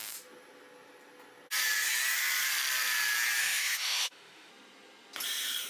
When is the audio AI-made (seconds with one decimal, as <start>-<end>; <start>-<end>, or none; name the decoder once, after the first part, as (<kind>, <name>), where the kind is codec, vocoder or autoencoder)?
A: 3.4-4.5 (autoencoder, DAC-VAE)